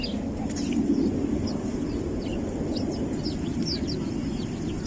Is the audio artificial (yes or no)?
no